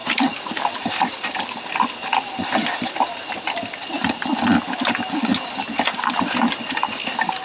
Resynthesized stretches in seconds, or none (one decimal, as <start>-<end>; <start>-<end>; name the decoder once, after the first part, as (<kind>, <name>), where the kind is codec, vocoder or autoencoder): 0.0-4.4 (vocoder, BigVGAN v2)